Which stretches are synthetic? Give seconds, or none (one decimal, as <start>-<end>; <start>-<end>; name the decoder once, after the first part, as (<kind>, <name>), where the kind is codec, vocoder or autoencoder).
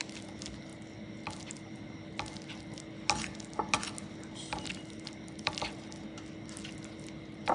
none